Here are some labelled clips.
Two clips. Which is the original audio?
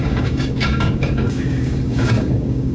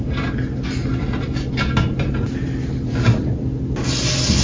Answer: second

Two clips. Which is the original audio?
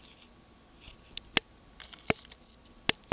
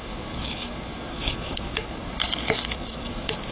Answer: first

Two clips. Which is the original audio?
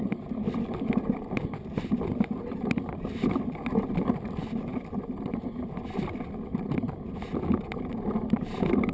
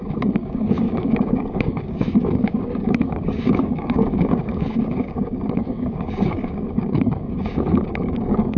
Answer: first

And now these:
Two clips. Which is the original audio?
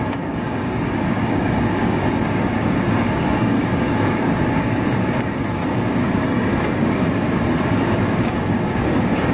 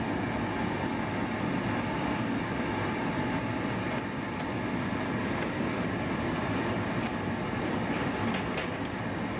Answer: second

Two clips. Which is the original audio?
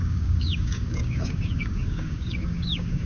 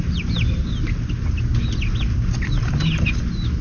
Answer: second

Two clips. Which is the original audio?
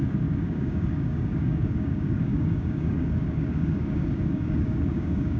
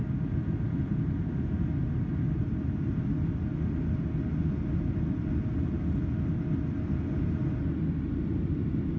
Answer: second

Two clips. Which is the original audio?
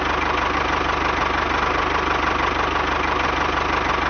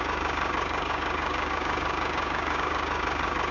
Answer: first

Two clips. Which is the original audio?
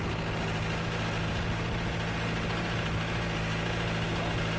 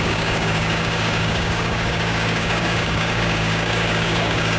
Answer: first